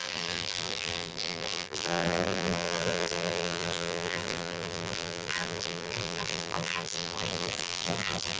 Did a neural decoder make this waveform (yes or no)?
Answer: yes